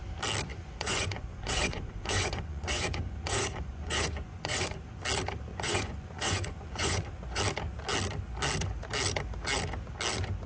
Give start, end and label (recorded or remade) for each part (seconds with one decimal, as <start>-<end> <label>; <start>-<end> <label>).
0.0-0.5 recorded; 0.5-4.9 remade; 4.9-5.5 recorded; 5.5-7.4 remade; 7.4-10.5 recorded